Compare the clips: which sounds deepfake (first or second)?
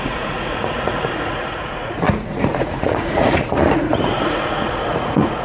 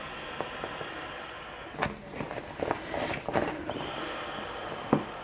first